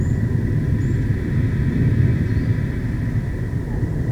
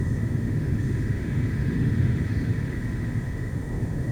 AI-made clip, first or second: second